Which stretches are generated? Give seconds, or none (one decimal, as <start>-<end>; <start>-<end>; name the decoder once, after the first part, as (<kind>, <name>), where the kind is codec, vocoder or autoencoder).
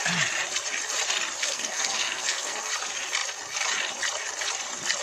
1.4-2.7 (codec, SNAC)